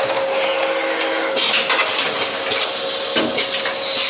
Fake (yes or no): no